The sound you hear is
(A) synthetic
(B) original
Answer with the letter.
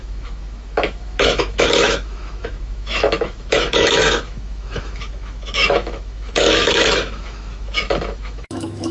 A